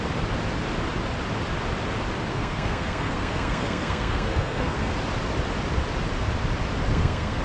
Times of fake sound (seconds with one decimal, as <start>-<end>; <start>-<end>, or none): 2.3-4.9; 6.9-7.4